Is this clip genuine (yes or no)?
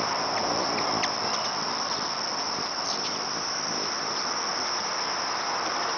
yes